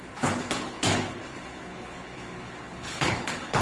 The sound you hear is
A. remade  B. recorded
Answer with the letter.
A